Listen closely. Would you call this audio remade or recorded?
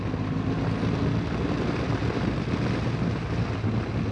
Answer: recorded